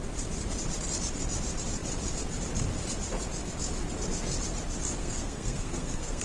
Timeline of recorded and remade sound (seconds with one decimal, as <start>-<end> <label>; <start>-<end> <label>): 0.0-5.0 recorded; 5.0-6.2 remade